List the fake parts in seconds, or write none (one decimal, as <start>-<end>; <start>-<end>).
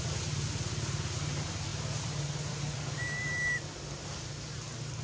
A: none